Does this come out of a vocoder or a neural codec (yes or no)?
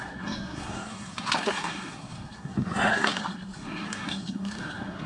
yes